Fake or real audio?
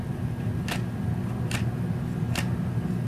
real